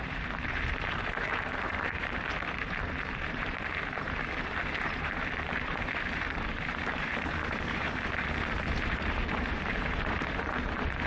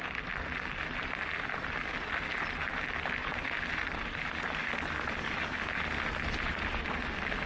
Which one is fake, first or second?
first